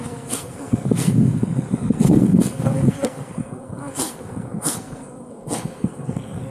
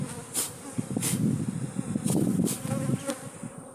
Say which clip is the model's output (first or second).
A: first